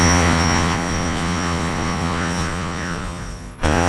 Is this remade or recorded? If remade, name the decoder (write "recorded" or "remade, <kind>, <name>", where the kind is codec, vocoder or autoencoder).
remade, vocoder, Vocos